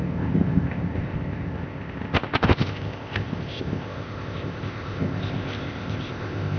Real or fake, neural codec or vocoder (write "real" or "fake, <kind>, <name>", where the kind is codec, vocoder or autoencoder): fake, codec, ZipCodec